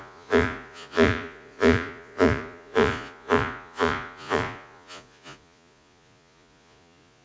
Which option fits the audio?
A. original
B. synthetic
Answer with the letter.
B